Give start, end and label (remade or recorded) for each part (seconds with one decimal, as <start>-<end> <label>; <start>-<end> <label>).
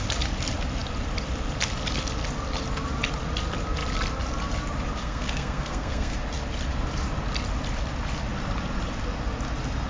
0.0-5.0 recorded; 5.0-6.2 remade; 6.2-9.9 recorded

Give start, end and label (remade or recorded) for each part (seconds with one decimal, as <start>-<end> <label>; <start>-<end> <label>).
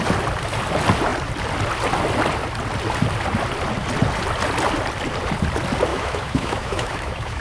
0.0-5.9 recorded; 5.9-7.4 remade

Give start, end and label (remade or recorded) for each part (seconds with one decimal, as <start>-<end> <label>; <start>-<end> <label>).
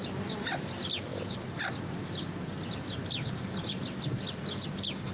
0.0-5.1 recorded